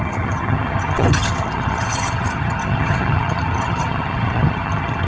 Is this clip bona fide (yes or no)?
no